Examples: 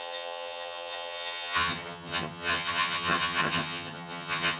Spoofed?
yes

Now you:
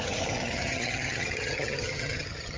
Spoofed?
yes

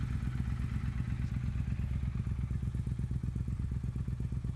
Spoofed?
no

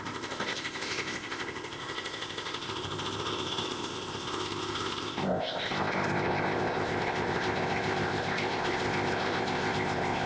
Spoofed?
yes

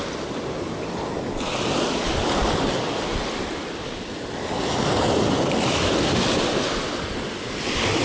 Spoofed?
no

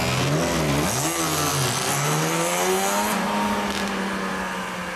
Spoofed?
no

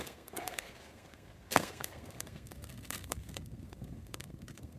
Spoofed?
yes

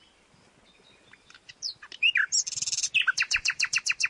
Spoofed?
yes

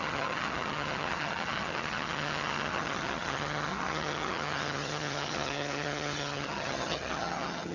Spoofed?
yes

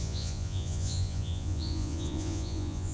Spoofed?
yes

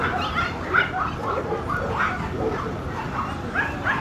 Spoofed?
no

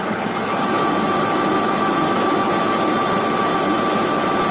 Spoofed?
yes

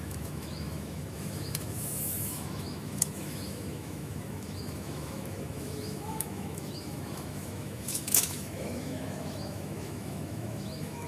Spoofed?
yes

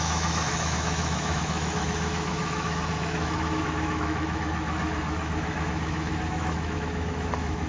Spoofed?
yes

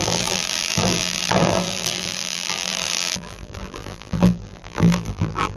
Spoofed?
yes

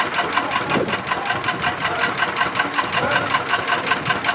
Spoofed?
no